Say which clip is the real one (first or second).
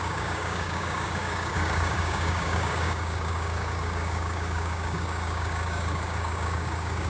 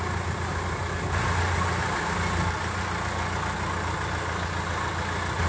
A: second